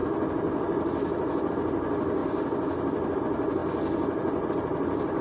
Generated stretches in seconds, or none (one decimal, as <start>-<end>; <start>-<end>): none